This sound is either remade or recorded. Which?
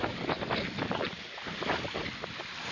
recorded